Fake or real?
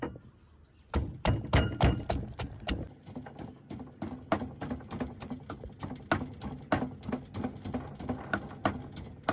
real